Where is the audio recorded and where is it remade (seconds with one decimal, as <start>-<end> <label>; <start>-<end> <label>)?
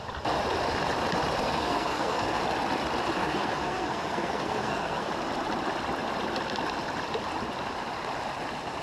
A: 0.0-1.4 recorded; 1.4-2.4 remade; 2.4-3.2 recorded; 3.2-5.1 remade; 5.1-8.8 recorded